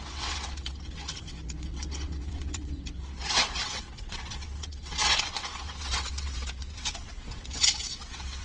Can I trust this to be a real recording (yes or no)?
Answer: no